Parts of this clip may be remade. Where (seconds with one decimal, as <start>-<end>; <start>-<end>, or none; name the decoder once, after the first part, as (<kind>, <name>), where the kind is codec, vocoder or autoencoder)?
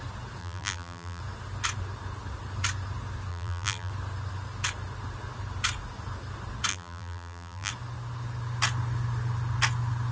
0.4-1.2 (vocoder, BigVGAN v2); 3.3-3.9; 6.7-7.7